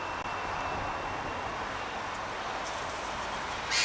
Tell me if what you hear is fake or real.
real